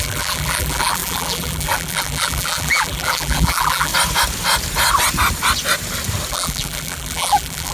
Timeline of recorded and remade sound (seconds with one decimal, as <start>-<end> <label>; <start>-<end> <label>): 0.0-3.9 remade; 3.9-6.3 recorded; 6.3-7.7 remade

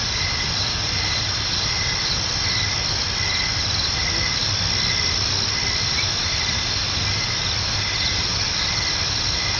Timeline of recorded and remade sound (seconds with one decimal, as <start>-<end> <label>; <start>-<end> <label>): 0.0-9.6 recorded

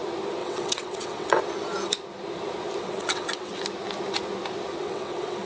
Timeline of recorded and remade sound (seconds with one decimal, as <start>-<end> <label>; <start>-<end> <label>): 0.0-0.4 recorded; 0.4-1.4 remade; 1.4-2.8 recorded; 2.8-3.5 remade; 3.5-4.8 recorded; 4.8-5.5 remade

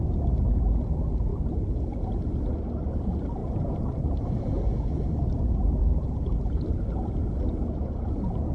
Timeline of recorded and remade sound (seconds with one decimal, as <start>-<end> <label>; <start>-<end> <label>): 0.0-3.4 recorded; 3.4-4.5 remade; 4.5-5.8 recorded; 5.8-6.6 remade; 6.6-8.5 recorded

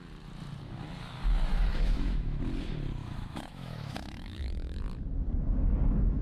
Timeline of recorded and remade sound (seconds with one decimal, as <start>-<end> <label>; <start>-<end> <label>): 0.0-1.7 recorded; 1.7-2.4 remade; 2.4-3.0 recorded; 3.0-4.8 remade; 4.8-6.2 recorded

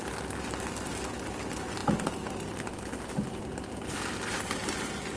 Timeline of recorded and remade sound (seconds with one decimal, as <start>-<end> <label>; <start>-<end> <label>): 0.0-5.2 recorded

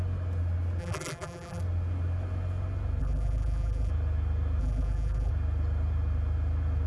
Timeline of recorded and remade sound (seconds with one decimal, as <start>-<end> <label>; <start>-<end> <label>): 0.0-0.8 recorded; 0.8-1.6 remade; 1.6-3.0 recorded; 3.0-3.9 remade; 3.9-4.6 recorded; 4.6-5.3 remade; 5.3-6.9 recorded